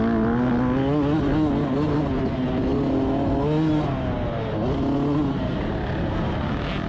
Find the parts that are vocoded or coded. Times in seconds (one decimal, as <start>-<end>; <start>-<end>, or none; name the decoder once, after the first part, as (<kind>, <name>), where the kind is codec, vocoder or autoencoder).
none